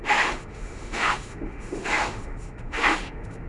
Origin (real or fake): fake